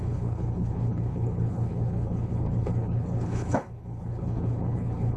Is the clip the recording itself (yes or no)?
no